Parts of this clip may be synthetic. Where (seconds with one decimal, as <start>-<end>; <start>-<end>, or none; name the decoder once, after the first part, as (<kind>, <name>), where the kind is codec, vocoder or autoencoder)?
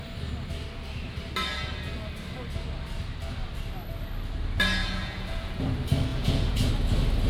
4.8-5.6 (vocoder, Vocos); 6.1-6.7